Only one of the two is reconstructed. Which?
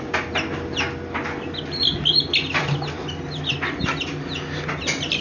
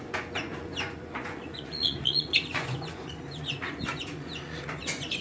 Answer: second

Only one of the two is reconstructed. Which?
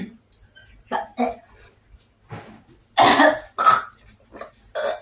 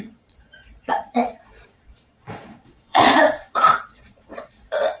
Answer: second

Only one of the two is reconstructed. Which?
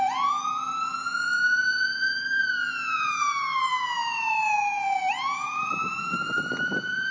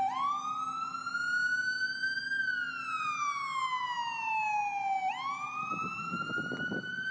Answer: first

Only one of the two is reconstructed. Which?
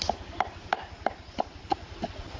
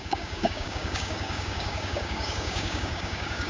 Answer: second